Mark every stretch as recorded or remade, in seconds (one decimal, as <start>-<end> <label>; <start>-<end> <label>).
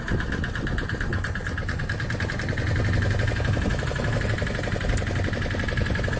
0.0-6.2 recorded